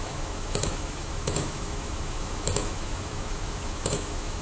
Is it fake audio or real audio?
fake